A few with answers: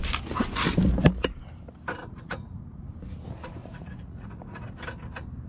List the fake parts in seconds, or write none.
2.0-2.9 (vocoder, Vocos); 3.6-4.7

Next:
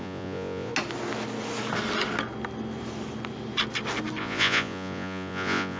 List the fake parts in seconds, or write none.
0.0-0.7 (vocoder, Vocos); 4.2-5.8